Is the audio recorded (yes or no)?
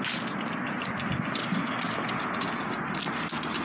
yes